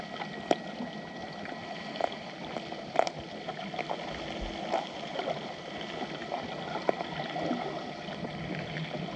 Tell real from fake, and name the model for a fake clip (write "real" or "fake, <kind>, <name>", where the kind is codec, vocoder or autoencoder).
real